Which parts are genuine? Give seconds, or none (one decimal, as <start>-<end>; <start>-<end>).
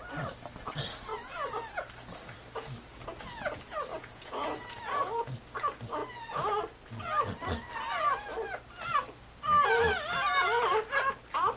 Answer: 0.0-3.9; 5.2-6.0; 6.6-11.6